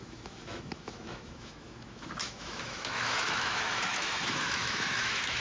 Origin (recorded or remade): remade